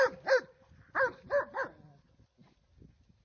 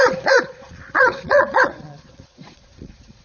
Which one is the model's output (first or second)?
second